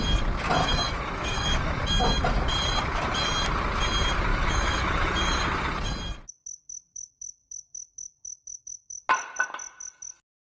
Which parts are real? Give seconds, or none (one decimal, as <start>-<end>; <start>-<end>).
0.0-0.6; 1.8-4.3; 5.4-10.5